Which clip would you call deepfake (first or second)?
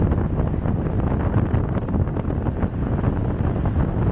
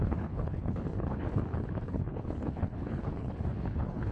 second